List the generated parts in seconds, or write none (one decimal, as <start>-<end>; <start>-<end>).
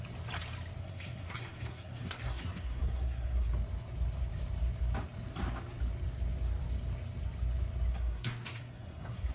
0.8-3.5; 7.9-9.3